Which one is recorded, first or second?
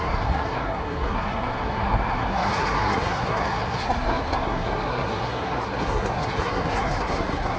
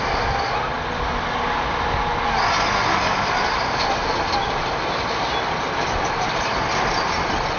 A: second